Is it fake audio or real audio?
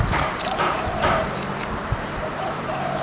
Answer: fake